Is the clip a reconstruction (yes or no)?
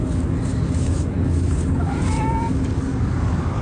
yes